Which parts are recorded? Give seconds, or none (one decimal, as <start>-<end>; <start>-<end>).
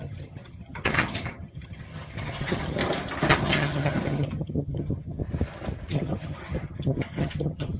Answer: 2.8-3.3; 5.2-5.9